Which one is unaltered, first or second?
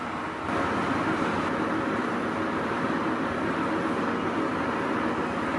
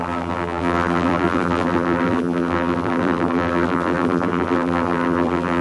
first